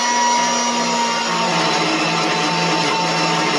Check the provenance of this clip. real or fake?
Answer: real